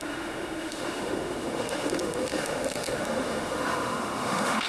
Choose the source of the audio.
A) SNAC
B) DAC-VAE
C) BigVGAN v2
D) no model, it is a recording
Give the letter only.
B